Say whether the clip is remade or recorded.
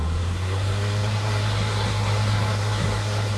remade